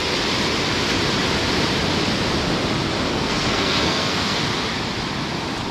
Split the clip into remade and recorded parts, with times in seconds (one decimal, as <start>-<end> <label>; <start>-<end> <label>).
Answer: 0.0-3.1 recorded; 3.1-4.4 remade; 4.4-5.7 recorded